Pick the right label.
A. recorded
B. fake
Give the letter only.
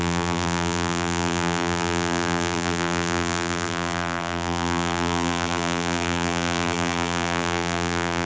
B